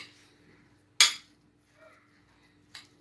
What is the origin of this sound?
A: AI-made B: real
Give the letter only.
B